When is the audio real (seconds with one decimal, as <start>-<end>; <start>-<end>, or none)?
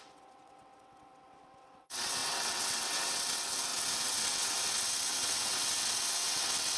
none